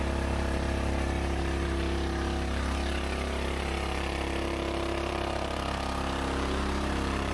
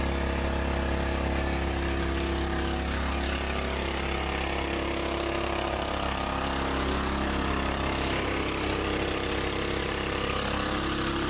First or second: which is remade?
first